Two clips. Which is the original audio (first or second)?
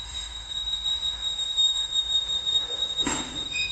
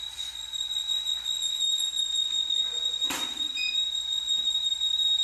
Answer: second